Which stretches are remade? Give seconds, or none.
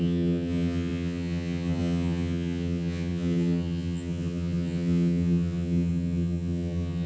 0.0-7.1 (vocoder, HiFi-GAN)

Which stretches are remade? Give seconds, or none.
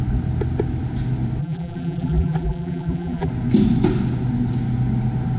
1.4-3.3 (vocoder, BigVGAN v2)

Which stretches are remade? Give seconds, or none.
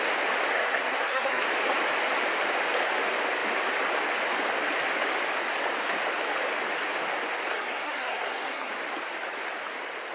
0.5-1.4 (codec, SNAC); 7.5-8.7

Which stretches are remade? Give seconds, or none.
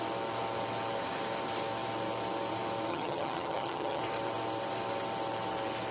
2.9-4.0 (vocoder, HiFi-GAN)